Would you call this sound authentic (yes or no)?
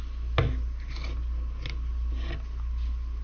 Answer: yes